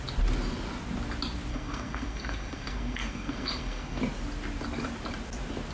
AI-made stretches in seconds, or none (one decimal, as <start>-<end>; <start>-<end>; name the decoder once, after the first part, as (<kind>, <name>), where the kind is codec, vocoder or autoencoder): 1.5-4.0 (codec, SNAC)